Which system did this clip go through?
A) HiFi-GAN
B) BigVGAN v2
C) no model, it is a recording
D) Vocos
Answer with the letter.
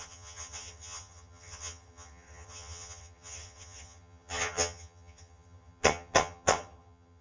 A